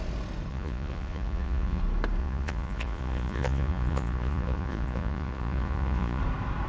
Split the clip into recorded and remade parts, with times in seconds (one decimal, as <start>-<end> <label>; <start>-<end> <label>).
0.0-0.5 recorded; 0.5-1.8 remade; 1.8-2.2 recorded; 2.2-6.2 remade; 6.2-6.7 recorded